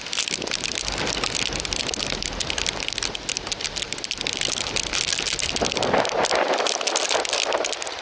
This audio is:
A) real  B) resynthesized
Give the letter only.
A